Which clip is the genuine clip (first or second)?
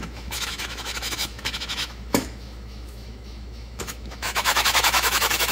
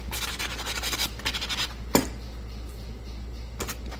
second